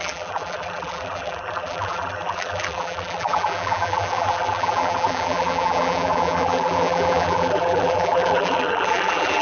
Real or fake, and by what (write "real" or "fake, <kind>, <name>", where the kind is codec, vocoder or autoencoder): fake, vocoder, BigVGAN v2